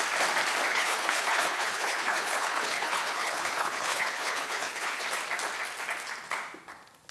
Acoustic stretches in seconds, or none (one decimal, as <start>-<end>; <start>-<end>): 0.0-0.7; 5.0-7.1